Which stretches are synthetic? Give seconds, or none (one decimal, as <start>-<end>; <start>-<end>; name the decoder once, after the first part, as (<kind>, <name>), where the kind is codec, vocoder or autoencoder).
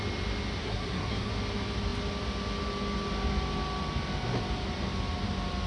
0.6-1.3 (codec, SNAC)